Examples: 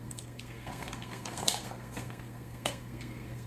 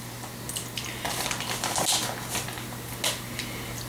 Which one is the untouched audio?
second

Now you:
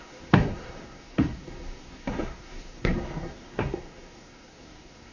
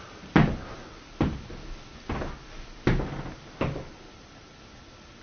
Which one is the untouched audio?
second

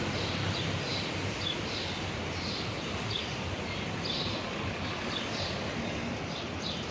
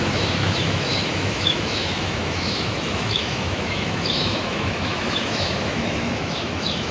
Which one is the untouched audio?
first